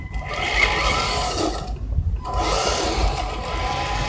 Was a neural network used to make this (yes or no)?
yes